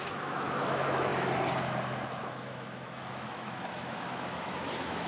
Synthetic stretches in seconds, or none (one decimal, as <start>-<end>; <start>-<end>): 0.0-1.1; 2.2-5.1